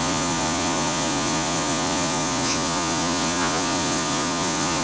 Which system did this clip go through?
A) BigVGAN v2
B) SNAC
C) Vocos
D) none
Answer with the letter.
C